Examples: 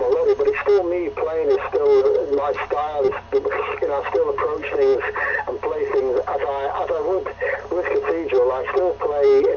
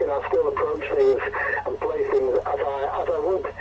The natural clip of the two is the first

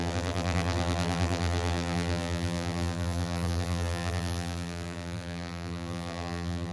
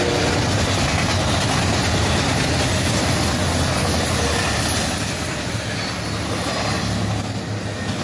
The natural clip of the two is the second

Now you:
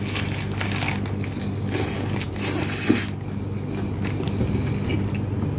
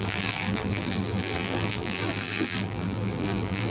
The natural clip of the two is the first